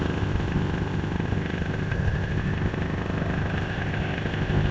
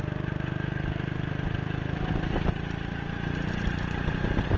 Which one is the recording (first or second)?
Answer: second